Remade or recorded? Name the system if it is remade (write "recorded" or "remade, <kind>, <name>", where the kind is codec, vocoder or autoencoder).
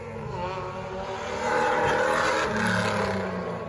recorded